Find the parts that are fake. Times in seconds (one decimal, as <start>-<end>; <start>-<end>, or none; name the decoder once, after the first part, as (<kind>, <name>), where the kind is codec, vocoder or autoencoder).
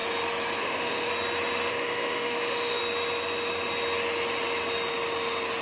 0.6-1.1 (autoencoder, DAC-VAE); 1.7-2.8